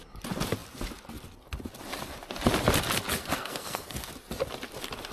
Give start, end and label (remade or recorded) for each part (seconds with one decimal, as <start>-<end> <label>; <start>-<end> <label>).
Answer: 0.0-3.2 recorded; 3.2-4.1 remade; 4.1-5.1 recorded